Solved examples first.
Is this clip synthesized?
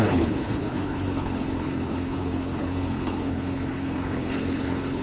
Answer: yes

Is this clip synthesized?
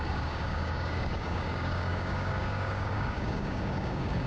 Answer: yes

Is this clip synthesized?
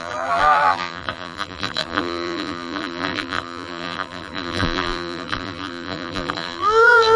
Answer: yes